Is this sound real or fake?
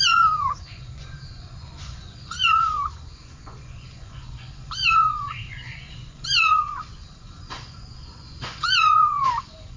fake